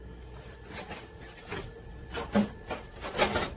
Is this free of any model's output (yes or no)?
yes